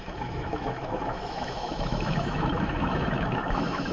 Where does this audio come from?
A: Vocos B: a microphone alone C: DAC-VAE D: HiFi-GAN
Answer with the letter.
C